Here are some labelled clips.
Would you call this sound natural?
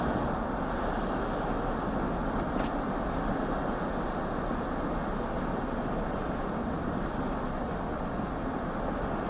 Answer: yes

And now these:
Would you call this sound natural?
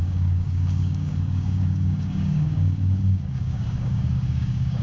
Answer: no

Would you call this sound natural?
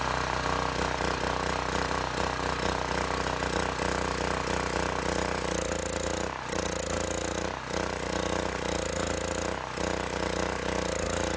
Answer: yes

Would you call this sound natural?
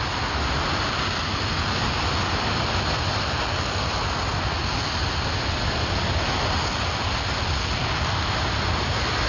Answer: yes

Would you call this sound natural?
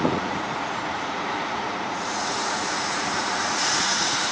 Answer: no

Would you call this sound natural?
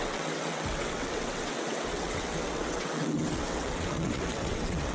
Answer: no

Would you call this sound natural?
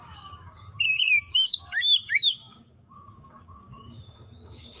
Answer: no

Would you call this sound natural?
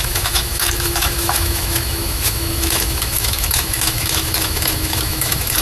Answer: no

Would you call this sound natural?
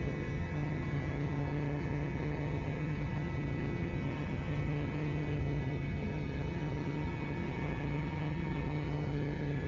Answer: no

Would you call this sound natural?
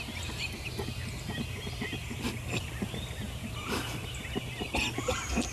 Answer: yes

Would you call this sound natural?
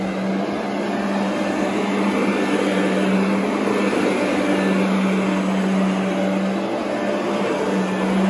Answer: yes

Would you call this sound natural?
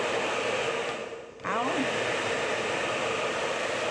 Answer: no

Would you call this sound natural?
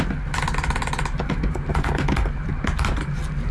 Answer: yes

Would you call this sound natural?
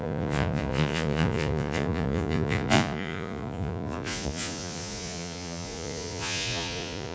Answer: no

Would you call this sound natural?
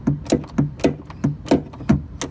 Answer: yes